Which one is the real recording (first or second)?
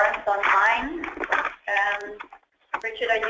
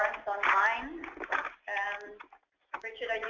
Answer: second